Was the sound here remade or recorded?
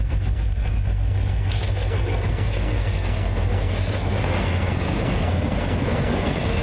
remade